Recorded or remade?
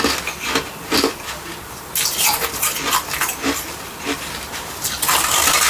recorded